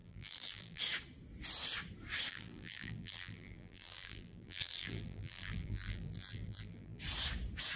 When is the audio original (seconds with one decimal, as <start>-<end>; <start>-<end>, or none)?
0.8-2.3; 7.0-7.8